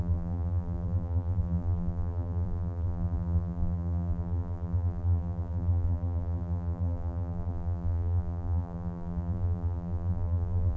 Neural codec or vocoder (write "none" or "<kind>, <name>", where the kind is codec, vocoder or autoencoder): vocoder, BigVGAN v2